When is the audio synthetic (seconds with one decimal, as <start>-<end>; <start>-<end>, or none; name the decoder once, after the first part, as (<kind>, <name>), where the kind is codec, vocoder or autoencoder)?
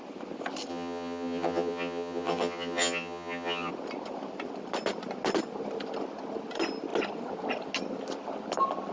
0.7-3.7 (vocoder, HiFi-GAN)